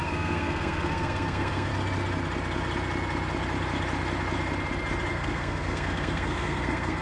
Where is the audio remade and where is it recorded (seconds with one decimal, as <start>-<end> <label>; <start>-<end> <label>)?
0.0-1.7 remade; 1.7-5.1 recorded; 5.1-7.0 remade